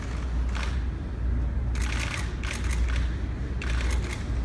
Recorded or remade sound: recorded